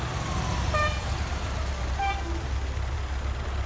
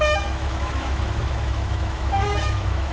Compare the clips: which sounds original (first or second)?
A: first